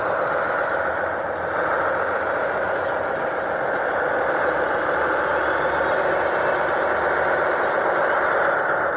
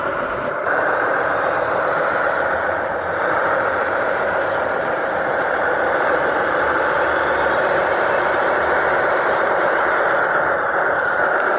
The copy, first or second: second